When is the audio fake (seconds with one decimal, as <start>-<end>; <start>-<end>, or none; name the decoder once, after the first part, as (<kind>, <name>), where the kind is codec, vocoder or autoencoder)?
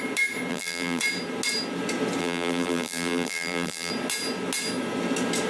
0.5-1.0 (vocoder, BigVGAN v2); 2.2-3.9